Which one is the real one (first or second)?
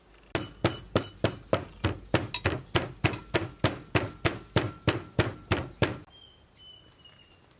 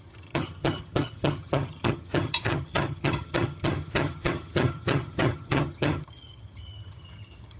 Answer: first